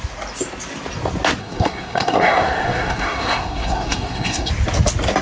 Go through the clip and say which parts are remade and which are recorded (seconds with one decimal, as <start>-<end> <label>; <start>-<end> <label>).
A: 0.0-1.4 recorded; 1.4-4.5 remade; 4.5-5.2 recorded